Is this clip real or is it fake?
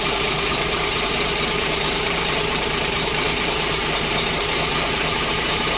fake